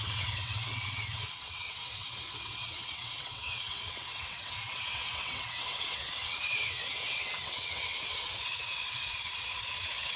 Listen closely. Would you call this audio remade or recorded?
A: remade